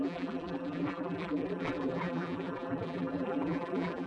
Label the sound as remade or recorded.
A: remade